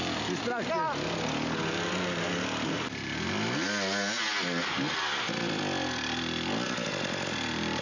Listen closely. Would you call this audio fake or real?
real